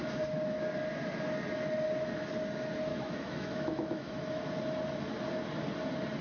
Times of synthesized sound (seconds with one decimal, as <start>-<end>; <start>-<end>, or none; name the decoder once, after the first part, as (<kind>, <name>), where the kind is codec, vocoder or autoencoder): 2.9-4.4 (autoencoder, DAC-VAE)